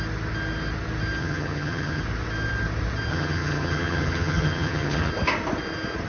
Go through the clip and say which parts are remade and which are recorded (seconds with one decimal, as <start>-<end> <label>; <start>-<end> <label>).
0.0-1.2 recorded; 1.2-2.0 remade; 2.0-3.1 recorded; 3.1-5.1 remade; 5.1-6.1 recorded